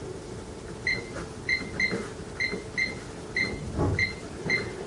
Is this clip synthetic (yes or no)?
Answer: no